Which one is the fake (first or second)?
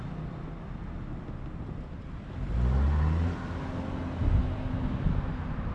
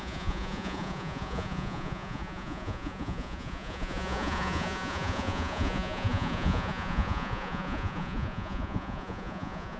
second